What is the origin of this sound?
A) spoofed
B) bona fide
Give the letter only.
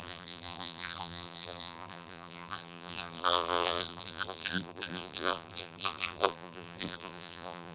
A